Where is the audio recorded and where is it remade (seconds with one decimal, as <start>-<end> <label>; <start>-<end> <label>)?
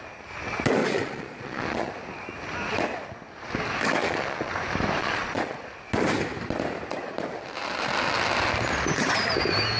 0.0-0.8 recorded; 0.8-1.9 remade; 1.9-4.0 recorded; 4.0-4.5 remade; 4.5-5.0 recorded; 5.0-5.6 remade; 5.6-9.8 recorded